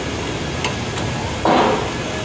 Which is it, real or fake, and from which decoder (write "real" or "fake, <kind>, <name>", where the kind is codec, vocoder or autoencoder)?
real